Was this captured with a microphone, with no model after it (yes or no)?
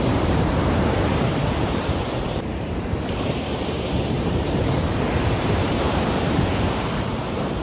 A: no